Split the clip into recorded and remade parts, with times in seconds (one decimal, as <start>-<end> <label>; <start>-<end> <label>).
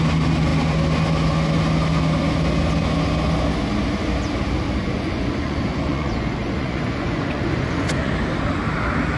0.0-4.8 recorded; 4.8-8.1 remade; 8.1-9.2 recorded